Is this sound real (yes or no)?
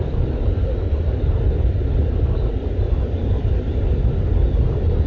yes